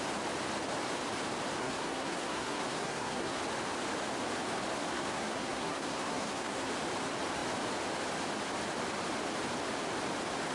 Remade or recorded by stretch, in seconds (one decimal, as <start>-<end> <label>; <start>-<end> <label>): 0.0-1.6 recorded; 1.6-3.4 remade; 3.4-4.9 recorded; 4.9-6.7 remade; 6.7-10.5 recorded

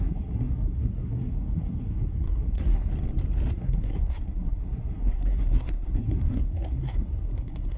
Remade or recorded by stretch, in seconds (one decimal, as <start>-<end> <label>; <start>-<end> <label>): 0.0-2.9 remade; 2.9-3.5 recorded; 3.5-7.8 remade

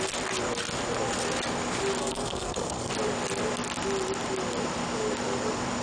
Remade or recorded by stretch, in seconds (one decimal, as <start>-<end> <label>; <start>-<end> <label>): 0.0-2.0 recorded; 2.0-2.9 remade; 2.9-5.8 recorded

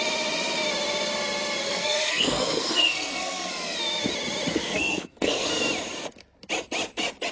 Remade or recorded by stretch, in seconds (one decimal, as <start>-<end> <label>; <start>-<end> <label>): 0.0-1.6 recorded; 1.6-3.5 remade; 3.5-4.5 recorded; 4.5-5.5 remade; 5.5-7.3 recorded

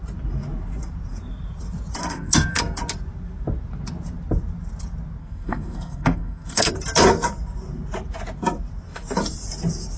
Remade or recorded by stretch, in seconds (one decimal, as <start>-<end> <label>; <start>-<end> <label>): 0.0-2.0 recorded; 2.0-2.6 remade; 2.6-5.2 recorded; 5.2-6.7 remade; 6.7-10.0 recorded

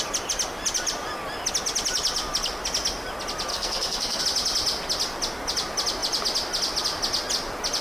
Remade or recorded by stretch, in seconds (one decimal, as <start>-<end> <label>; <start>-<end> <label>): 0.0-3.5 recorded; 3.5-4.2 remade; 4.2-7.8 recorded

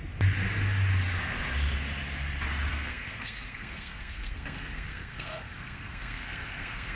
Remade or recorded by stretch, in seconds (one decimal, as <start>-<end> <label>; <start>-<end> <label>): 0.0-2.7 recorded; 2.7-7.0 remade

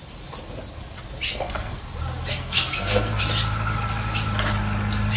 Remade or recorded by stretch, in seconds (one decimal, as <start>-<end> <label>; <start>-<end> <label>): 0.0-1.3 recorded; 1.3-1.8 remade; 1.8-2.3 recorded; 2.3-3.2 remade; 3.2-5.2 recorded